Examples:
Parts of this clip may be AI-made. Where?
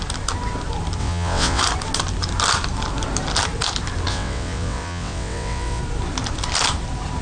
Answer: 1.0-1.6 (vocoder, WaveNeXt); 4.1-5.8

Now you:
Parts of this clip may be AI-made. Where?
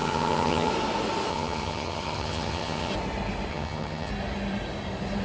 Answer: 0.0-0.7 (vocoder, HiFi-GAN); 1.3-2.9; 3.5-4.1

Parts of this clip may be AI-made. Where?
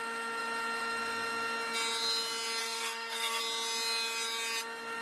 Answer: 2.6-3.4 (codec, SNAC)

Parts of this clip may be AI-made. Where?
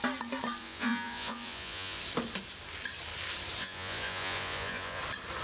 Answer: 0.6-2.0 (vocoder, Vocos); 3.6-5.0